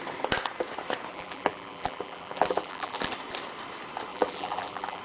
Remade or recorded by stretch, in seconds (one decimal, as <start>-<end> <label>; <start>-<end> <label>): 0.0-1.1 recorded; 1.1-3.1 remade; 3.1-4.1 recorded; 4.1-5.0 remade